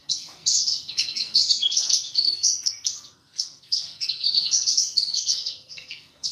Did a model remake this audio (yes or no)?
yes